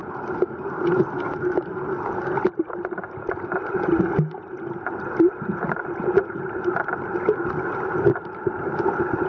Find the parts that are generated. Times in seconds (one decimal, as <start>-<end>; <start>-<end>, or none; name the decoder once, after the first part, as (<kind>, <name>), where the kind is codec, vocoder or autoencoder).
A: none